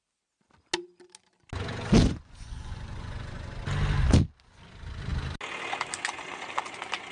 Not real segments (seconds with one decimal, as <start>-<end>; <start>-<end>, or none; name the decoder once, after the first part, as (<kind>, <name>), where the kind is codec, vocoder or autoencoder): 2.0-3.6 (vocoder, Vocos)